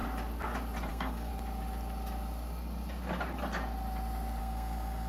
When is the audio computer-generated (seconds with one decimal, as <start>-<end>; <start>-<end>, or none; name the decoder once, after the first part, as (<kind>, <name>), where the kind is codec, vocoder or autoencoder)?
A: 0.9-1.3 (codec, SNAC); 4.4-5.1